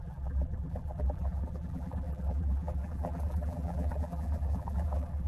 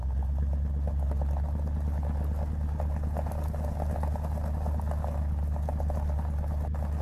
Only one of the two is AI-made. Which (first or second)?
first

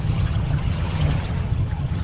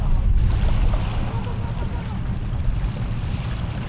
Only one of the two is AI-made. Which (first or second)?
first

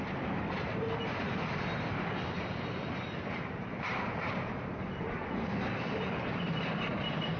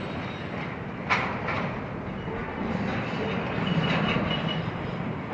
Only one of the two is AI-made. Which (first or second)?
first